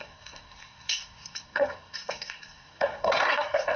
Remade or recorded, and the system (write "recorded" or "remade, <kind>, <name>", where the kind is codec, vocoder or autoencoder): remade, codec, SNAC